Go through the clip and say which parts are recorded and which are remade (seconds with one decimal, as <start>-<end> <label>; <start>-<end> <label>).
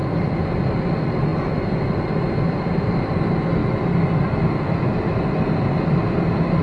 0.0-6.6 recorded